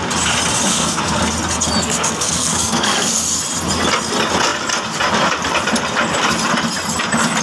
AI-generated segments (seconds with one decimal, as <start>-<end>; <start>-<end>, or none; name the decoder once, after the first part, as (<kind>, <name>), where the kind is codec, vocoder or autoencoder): 0.7-1.2 (codec, SNAC); 1.8-3.4